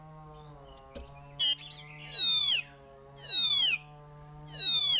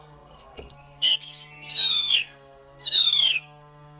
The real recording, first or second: first